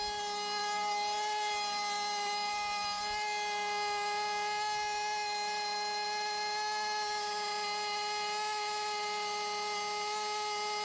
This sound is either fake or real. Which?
real